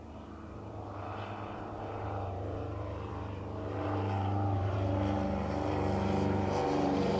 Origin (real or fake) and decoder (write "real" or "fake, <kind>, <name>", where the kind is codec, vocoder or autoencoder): fake, vocoder, BigVGAN v2